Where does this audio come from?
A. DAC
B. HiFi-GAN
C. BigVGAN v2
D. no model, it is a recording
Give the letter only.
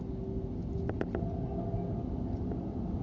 D